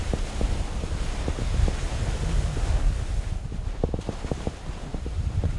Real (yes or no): yes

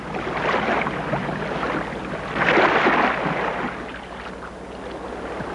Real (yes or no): yes